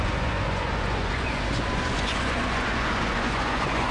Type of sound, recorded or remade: remade